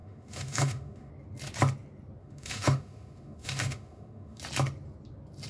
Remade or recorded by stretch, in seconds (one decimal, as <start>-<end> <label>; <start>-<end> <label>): 0.0-1.1 remade; 1.1-2.2 recorded; 2.2-4.4 remade; 4.4-5.5 recorded